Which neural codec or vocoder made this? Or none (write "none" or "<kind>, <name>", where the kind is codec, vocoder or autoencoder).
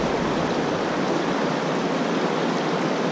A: none